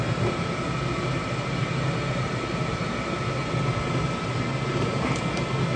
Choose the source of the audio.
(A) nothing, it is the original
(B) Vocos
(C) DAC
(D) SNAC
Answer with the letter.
A